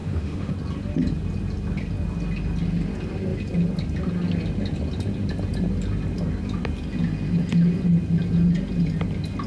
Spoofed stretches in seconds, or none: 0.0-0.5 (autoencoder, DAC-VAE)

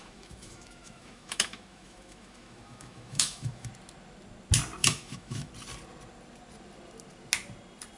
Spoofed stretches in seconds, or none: 0.0-3.7 (autoencoder, DAC-VAE); 4.8-5.5

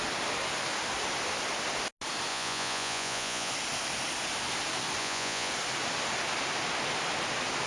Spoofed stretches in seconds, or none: 2.3-3.5 (vocoder, Vocos); 5.0-5.5

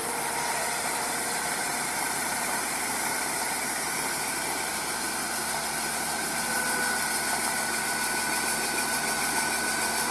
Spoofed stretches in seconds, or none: 0.0-4.8 (vocoder, BigVGAN v2)

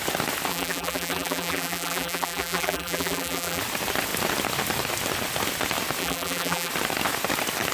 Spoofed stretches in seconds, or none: 0.5-3.6 (vocoder, BigVGAN v2); 6.0-6.7